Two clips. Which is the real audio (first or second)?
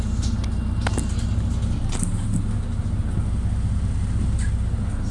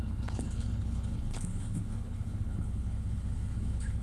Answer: first